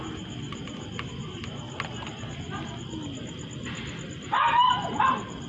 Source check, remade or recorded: recorded